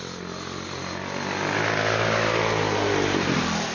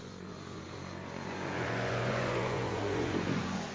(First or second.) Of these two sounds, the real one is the first